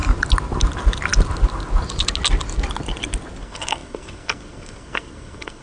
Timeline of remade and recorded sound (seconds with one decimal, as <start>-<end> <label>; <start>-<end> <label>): 0.0-3.4 recorded; 3.4-5.6 remade